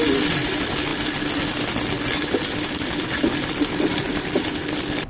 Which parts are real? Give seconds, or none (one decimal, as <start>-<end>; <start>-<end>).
0.9-3.9